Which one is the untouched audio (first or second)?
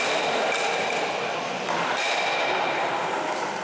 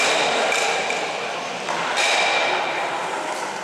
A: second